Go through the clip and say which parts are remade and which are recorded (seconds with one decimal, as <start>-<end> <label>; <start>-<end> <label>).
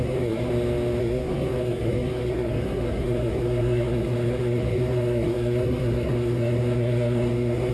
0.0-0.5 remade; 0.5-1.0 recorded; 1.0-7.7 remade